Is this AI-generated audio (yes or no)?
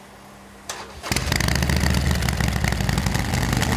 no